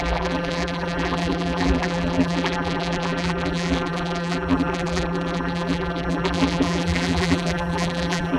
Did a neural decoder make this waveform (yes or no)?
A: yes